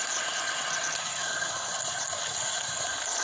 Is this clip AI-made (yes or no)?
no